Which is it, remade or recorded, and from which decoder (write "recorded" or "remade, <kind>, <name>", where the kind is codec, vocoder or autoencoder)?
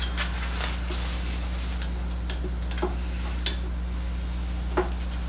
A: recorded